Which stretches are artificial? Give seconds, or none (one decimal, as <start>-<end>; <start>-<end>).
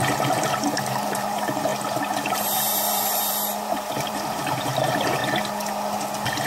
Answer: 0.0-1.7; 2.3-5.2